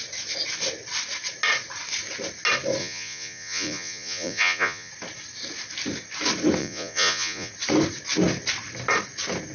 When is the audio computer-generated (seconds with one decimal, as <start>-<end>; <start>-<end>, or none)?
2.8-4.9; 6.6-7.5